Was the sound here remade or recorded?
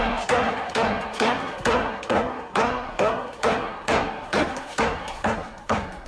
remade